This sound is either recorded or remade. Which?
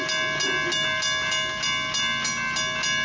recorded